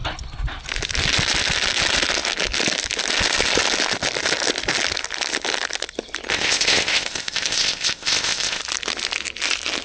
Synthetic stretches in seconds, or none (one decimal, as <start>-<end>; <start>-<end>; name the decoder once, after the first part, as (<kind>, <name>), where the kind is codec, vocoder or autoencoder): 6.3-8.6 (codec, ZipCodec)

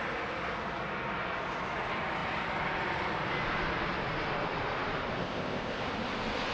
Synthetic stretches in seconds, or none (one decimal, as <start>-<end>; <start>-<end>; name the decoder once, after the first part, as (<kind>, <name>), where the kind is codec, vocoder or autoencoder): 5.2-5.8 (codec, ZipCodec)